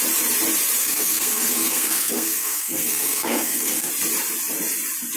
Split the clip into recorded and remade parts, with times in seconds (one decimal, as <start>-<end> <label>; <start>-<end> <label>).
0.0-0.8 recorded; 0.8-3.9 remade; 3.9-5.2 recorded